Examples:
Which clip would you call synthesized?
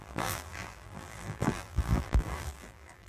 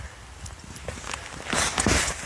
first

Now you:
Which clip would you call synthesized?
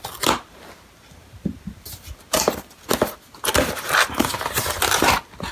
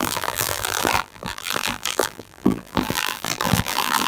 second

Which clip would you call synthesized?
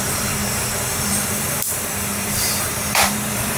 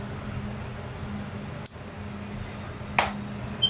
first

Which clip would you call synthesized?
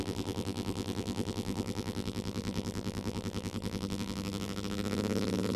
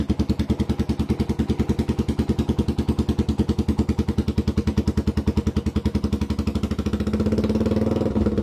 first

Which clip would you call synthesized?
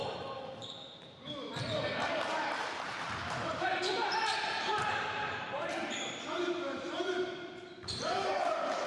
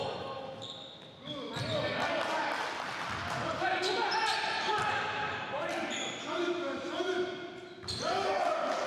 first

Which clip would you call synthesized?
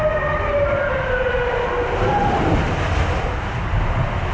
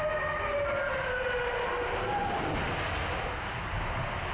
first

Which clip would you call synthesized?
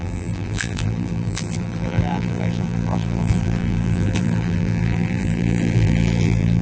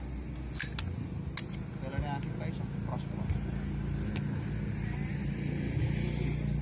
first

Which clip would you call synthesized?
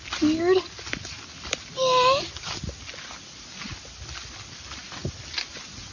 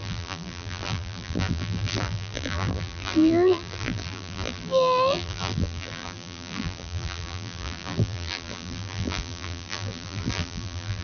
second